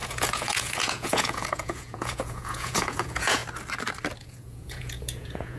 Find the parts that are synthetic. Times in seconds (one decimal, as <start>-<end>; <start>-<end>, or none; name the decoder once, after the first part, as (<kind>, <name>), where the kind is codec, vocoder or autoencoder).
0.0-3.4 (vocoder, Vocos); 4.2-5.6